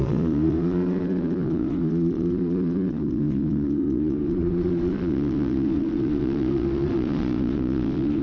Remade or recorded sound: remade